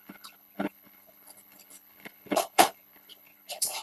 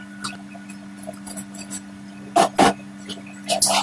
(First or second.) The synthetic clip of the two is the first